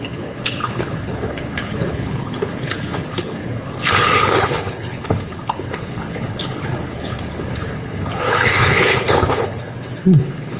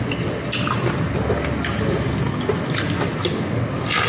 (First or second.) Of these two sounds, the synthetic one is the first